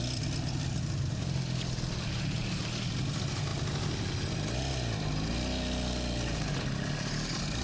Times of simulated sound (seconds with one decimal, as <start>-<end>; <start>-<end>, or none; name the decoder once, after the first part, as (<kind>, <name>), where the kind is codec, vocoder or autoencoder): none